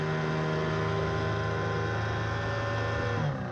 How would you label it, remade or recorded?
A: recorded